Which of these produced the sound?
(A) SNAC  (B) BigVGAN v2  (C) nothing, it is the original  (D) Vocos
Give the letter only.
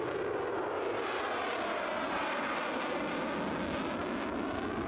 C